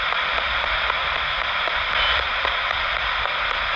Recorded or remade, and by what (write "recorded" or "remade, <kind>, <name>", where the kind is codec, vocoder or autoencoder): recorded